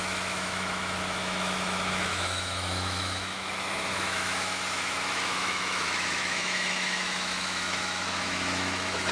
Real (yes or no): no